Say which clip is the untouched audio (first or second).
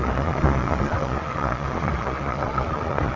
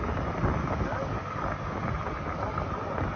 second